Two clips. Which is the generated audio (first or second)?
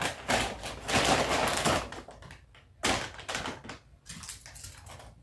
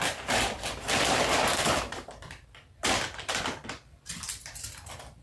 second